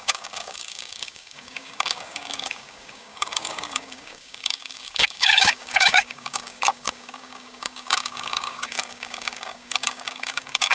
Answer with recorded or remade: remade